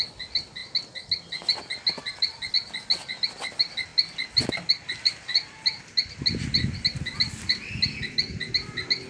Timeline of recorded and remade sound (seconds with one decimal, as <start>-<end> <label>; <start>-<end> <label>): 0.0-9.1 recorded